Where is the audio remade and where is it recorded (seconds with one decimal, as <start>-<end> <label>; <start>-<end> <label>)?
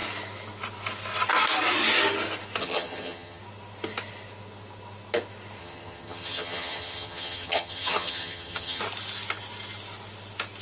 0.0-2.6 recorded; 2.6-3.4 remade; 3.4-5.6 recorded; 5.6-8.8 remade; 8.8-10.6 recorded